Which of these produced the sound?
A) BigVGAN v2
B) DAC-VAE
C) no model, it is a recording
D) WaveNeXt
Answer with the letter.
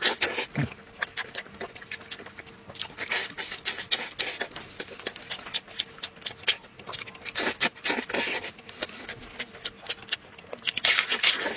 C